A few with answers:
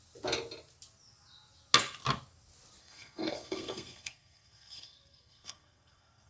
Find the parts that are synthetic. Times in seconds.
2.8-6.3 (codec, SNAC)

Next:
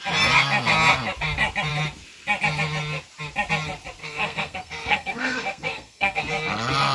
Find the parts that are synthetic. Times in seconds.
4.0-6.2 (codec, SNAC)

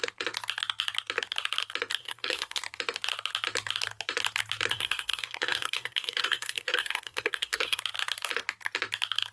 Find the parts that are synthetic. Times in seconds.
2.0-2.6 (codec, SNAC); 4.7-7.8

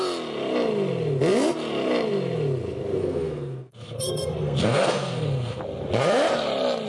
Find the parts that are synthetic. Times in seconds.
3.0-5.6 (codec, SNAC)